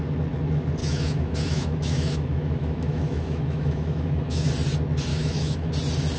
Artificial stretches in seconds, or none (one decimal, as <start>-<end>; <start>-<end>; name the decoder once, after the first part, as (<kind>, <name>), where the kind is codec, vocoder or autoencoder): 0.8-4.5 (autoencoder, DAC-VAE); 5.1-5.7